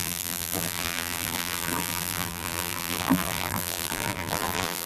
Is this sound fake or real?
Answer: fake